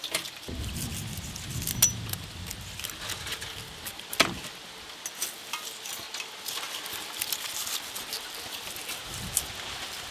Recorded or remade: recorded